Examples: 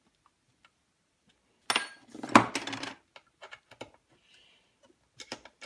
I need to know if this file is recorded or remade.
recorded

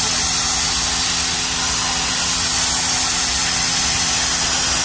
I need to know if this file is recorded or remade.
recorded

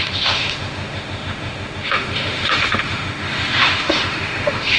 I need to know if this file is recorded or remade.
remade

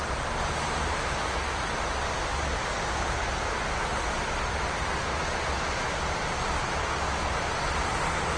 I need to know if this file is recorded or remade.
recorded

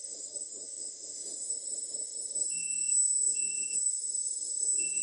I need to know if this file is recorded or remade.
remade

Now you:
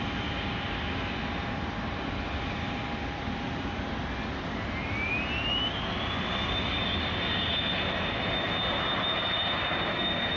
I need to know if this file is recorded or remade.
recorded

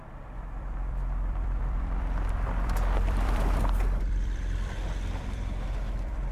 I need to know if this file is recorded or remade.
remade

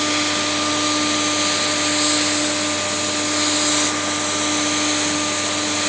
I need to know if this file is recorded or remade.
recorded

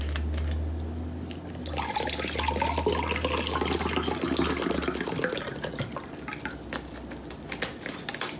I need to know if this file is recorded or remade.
recorded